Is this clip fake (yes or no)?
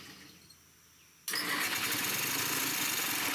no